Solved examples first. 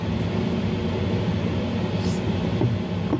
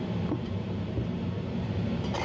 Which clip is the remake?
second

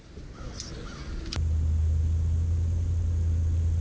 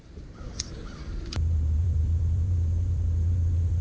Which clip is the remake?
second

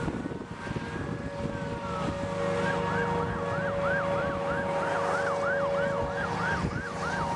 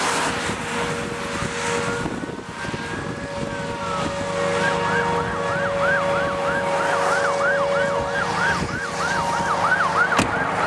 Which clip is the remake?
first